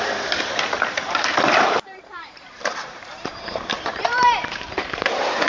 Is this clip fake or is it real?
fake